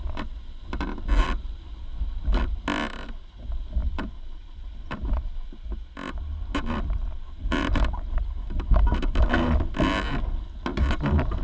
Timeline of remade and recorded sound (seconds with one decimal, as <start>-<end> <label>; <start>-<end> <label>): 0.0-7.4 recorded; 7.4-9.1 remade; 9.1-11.4 recorded